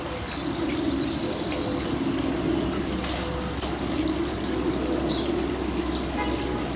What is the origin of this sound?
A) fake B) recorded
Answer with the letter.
B